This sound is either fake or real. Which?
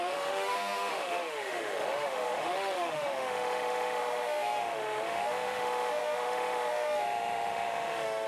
fake